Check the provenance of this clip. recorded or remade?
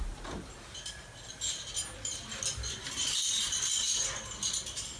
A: recorded